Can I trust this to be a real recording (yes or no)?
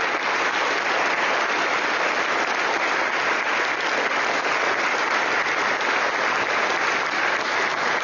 yes